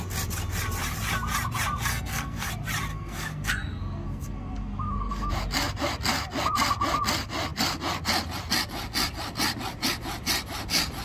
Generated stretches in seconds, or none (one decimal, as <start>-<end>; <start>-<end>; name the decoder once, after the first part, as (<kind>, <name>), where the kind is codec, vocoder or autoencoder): 1.9-2.5 (codec, SNAC); 2.9-5.3